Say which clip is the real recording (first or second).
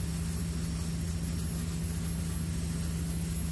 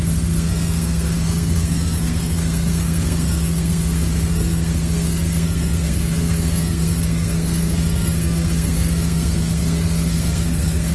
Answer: first